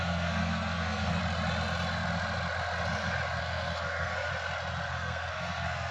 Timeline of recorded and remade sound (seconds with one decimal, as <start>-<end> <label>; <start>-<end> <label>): 0.0-1.2 remade; 1.2-3.4 recorded; 3.4-4.3 remade; 4.3-4.9 recorded; 4.9-5.9 remade

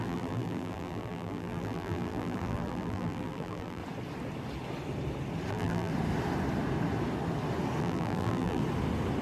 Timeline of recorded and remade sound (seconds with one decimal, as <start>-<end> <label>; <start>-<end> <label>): 0.0-3.8 remade; 3.8-5.5 recorded; 5.5-5.9 remade; 5.9-7.8 recorded; 7.8-8.6 remade; 8.6-9.2 recorded

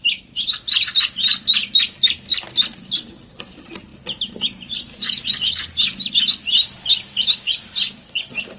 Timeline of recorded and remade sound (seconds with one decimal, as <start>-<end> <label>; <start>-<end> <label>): 0.0-8.6 recorded

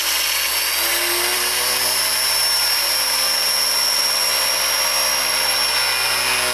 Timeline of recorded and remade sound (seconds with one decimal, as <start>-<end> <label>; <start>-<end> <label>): 0.0-1.3 recorded; 1.3-4.5 remade; 4.5-6.5 recorded

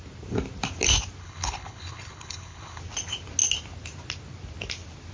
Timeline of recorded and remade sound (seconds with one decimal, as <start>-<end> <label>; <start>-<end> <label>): 0.0-1.2 recorded; 1.2-2.8 remade; 2.8-5.1 recorded

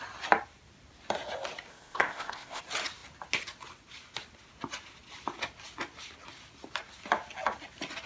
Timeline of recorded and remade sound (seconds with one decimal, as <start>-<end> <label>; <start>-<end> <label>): 0.0-1.7 recorded; 1.7-2.6 remade; 2.6-8.1 recorded

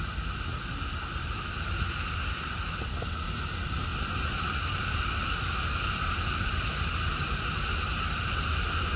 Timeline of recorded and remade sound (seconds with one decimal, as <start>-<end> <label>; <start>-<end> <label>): 0.0-9.0 recorded